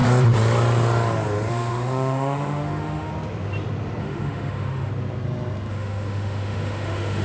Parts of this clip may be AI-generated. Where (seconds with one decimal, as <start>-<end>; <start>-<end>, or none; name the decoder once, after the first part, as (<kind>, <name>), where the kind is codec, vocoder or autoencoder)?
1.5-3.1 (autoencoder, DAC-VAE); 4.0-4.9; 5.7-7.2